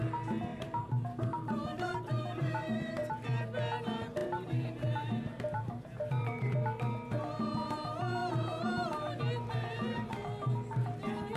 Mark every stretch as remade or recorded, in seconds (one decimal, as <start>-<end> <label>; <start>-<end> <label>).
0.0-0.5 recorded; 0.5-2.7 remade; 2.7-4.2 recorded; 4.2-6.5 remade; 6.5-8.2 recorded; 8.2-9.2 remade; 9.2-11.4 recorded